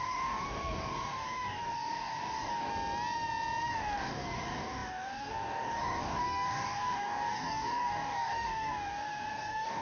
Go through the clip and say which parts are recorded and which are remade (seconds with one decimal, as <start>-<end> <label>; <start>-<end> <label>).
0.0-2.7 remade; 2.7-3.7 recorded; 3.7-9.8 remade

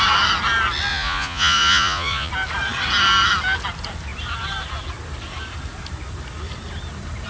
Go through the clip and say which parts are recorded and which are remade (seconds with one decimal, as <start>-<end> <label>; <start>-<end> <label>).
0.0-0.9 recorded; 0.9-2.3 remade; 2.3-7.3 recorded

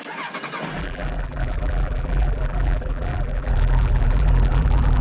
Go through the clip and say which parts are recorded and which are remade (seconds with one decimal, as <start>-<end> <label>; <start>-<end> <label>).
0.0-0.8 recorded; 0.8-5.0 remade

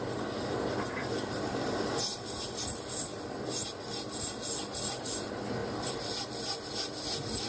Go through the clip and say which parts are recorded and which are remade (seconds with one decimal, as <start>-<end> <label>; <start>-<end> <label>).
0.0-1.0 recorded; 1.0-3.5 remade; 3.5-7.5 recorded